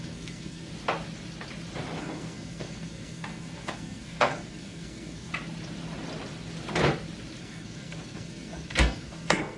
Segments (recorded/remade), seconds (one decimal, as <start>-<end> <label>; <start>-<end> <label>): 0.0-0.7 remade; 0.7-2.0 recorded; 2.0-5.3 remade; 5.3-7.4 recorded; 7.4-9.6 remade